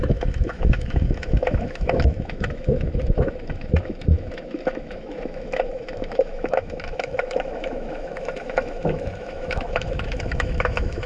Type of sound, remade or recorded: remade